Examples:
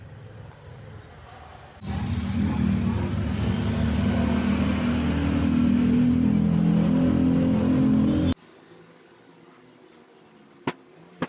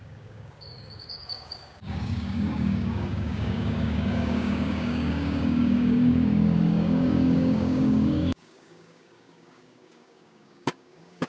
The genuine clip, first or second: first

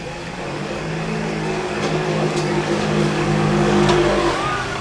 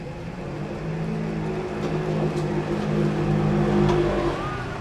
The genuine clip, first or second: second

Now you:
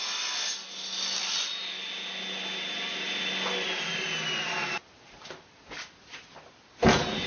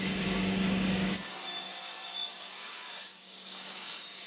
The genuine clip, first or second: first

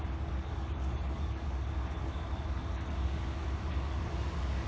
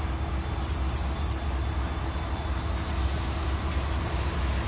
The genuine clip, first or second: second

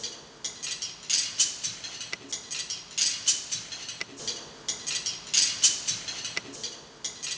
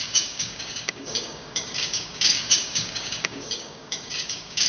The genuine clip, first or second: first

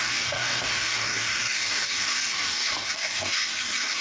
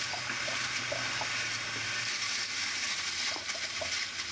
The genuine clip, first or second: second